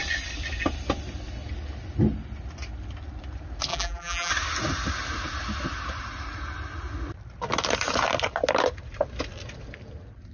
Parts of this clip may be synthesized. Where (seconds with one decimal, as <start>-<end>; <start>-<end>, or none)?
3.7-4.3